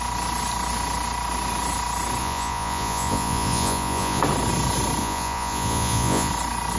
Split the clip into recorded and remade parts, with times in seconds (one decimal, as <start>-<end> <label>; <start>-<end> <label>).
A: 0.0-2.2 recorded; 2.2-4.2 remade; 4.2-5.0 recorded; 5.0-6.3 remade; 6.3-6.8 recorded